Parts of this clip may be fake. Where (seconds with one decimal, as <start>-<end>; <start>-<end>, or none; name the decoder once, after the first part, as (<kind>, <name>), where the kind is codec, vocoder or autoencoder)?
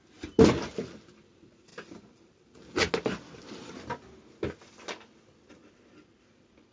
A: none